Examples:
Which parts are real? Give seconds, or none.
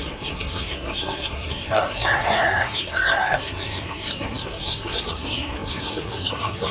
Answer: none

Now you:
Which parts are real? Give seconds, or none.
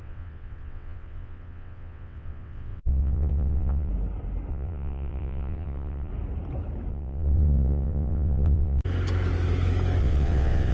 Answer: 3.9-4.5; 6.1-6.9; 8.8-10.0